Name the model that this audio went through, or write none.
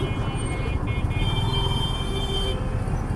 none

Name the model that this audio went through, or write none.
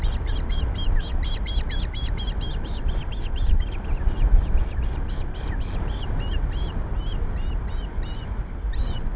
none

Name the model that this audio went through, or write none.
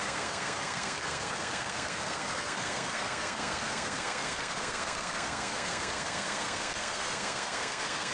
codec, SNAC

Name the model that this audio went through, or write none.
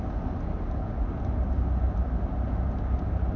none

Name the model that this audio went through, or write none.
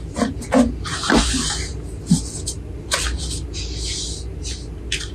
none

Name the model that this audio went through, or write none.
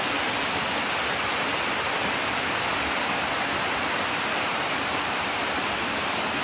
none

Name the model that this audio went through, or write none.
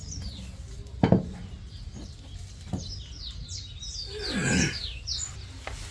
none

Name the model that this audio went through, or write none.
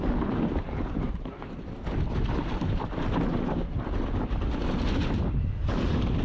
none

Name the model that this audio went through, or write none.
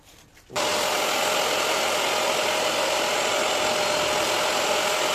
none